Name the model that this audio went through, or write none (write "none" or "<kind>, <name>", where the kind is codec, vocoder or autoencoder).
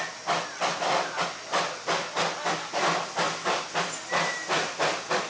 none